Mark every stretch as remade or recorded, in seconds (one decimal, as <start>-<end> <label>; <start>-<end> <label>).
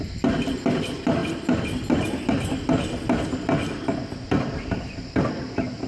0.0-5.9 recorded